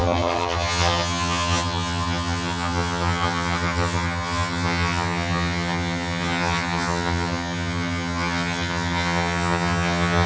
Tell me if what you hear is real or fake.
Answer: fake